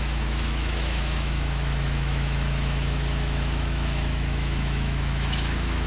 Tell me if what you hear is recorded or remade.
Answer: remade